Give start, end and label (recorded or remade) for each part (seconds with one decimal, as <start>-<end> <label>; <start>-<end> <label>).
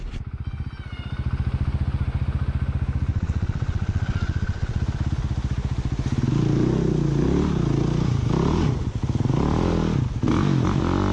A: 0.0-3.1 recorded; 3.1-4.8 remade; 4.8-11.1 recorded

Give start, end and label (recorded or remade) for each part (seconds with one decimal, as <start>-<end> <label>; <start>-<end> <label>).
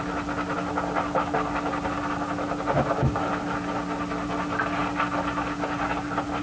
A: 0.0-6.4 recorded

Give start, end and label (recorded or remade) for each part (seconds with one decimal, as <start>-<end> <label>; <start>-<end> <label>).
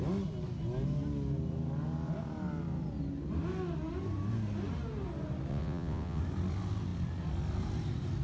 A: 0.0-5.5 recorded; 5.5-6.2 remade; 6.2-8.2 recorded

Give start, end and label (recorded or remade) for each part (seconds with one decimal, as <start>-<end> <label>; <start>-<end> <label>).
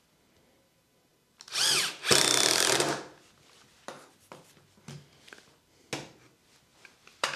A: 0.0-6.7 recorded; 6.7-7.4 remade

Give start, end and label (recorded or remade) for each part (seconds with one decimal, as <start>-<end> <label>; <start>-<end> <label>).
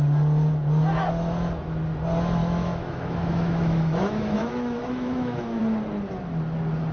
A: 0.0-2.4 recorded; 2.4-5.6 remade; 5.6-6.9 recorded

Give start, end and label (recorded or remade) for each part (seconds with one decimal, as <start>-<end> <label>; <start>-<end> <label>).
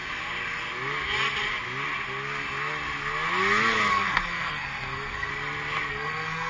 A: 0.0-3.9 recorded; 3.9-5.3 remade; 5.3-5.9 recorded; 5.9-6.5 remade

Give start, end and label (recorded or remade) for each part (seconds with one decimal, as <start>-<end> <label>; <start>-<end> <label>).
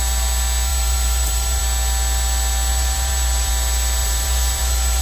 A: 0.0-0.7 recorded; 0.7-1.6 remade; 1.6-2.7 recorded; 2.7-3.5 remade; 3.5-4.0 recorded; 4.0-5.0 remade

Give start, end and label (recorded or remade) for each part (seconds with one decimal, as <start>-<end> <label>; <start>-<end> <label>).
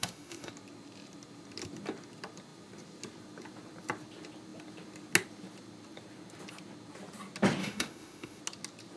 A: 0.0-0.5 remade; 0.5-7.6 recorded; 7.6-8.4 remade; 8.4-9.0 recorded